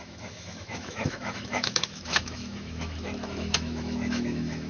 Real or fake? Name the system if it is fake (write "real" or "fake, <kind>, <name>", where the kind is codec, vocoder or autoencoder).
fake, autoencoder, DAC-VAE